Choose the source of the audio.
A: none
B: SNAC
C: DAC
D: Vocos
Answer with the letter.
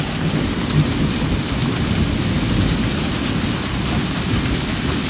A